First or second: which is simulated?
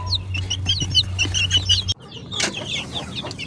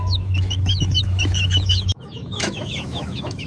second